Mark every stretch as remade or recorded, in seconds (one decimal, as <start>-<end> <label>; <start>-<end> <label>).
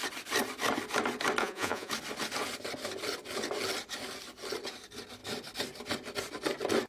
0.0-1.4 recorded; 1.4-1.9 remade; 1.9-6.9 recorded